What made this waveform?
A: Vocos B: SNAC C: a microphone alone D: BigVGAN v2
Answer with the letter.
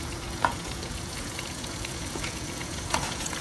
A